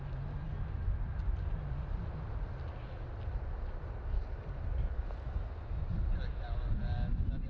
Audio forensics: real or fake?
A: real